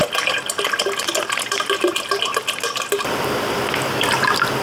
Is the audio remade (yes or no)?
no